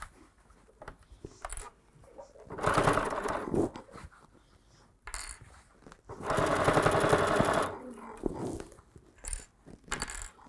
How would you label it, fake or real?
real